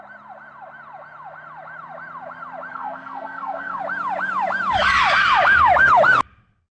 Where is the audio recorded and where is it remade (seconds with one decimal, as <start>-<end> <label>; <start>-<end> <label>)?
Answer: 0.0-2.7 recorded; 2.7-3.8 remade; 3.8-6.7 recorded